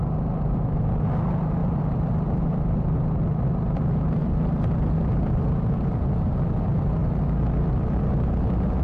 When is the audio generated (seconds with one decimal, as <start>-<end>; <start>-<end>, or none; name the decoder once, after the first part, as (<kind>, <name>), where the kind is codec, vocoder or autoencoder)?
1.6-2.4 (vocoder, BigVGAN v2); 4.2-6.2